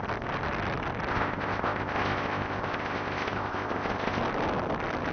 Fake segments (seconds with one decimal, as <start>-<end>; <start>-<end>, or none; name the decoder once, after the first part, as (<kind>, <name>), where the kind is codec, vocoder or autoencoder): 1.1-4.2 (codec, ZipCodec)